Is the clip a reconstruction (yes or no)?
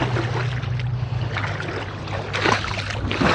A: no